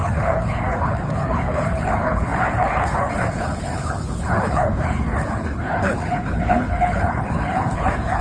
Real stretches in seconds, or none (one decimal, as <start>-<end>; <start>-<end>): none